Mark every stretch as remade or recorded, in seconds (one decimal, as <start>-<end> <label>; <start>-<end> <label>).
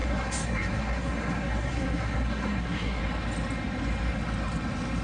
0.0-3.0 remade; 3.0-5.0 recorded